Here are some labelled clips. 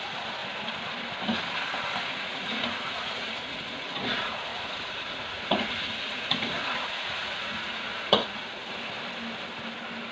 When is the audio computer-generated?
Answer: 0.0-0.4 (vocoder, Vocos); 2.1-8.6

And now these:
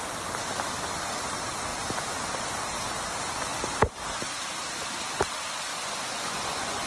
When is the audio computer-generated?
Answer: 5.7-6.9 (vocoder, Vocos)

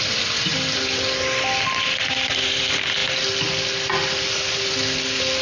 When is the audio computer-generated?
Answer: none

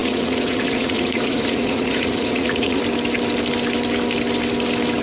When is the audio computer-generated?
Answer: 0.0-2.8 (vocoder, Vocos)

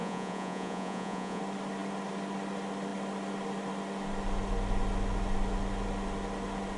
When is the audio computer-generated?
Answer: 0.0-1.4 (vocoder, Vocos)